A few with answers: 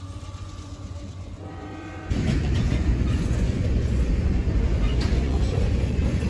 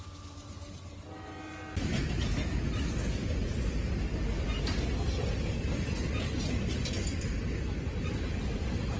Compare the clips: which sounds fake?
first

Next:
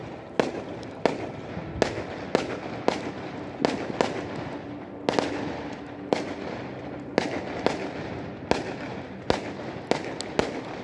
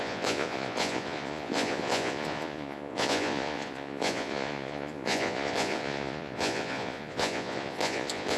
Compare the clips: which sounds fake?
second